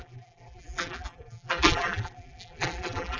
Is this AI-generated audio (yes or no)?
yes